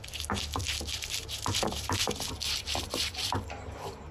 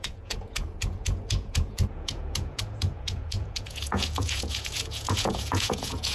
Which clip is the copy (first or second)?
second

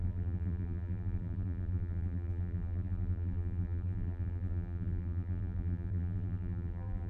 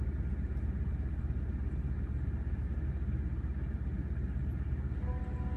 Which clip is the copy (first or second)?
first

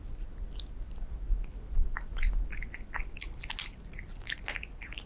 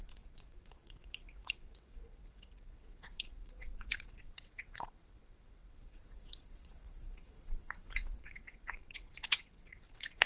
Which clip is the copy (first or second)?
second